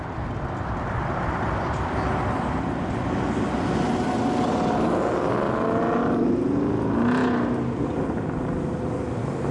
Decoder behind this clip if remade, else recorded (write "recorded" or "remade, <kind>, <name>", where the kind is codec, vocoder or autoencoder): recorded